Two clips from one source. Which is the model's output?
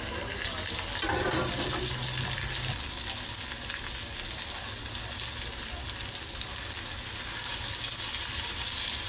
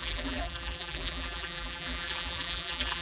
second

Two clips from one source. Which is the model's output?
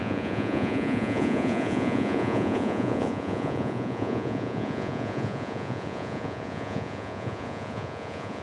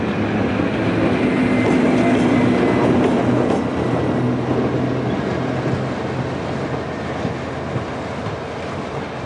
first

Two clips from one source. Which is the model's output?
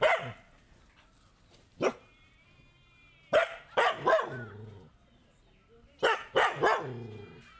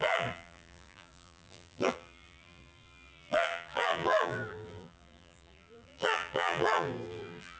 second